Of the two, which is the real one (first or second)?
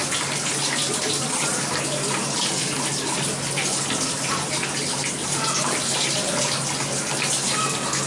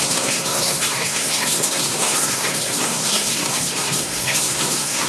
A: first